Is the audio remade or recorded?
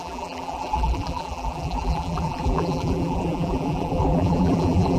remade